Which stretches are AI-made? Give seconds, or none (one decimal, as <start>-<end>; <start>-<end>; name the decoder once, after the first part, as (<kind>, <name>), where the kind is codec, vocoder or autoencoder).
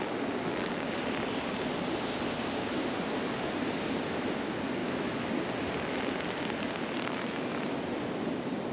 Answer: 4.8-5.3 (autoencoder, DAC-VAE)